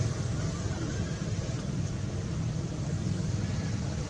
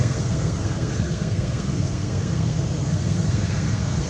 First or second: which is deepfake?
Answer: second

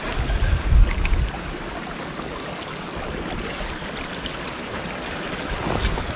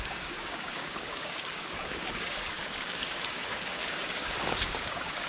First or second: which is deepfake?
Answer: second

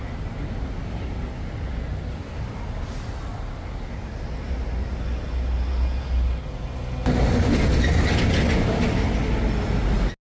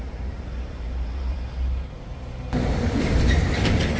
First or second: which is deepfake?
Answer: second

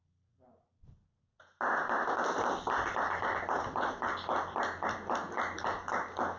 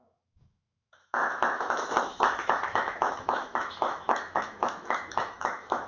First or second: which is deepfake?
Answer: second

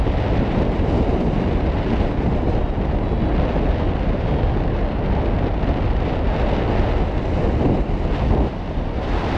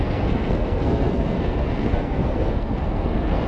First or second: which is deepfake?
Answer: second